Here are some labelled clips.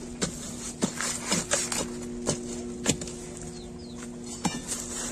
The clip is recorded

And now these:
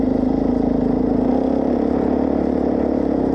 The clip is recorded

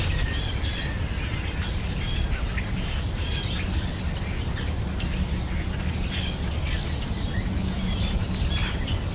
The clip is recorded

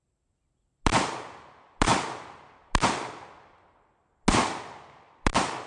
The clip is recorded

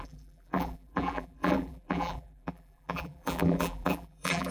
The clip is remade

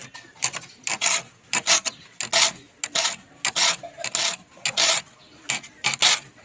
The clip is recorded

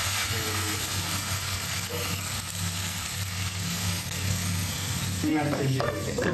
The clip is remade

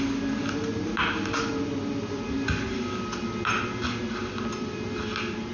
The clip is recorded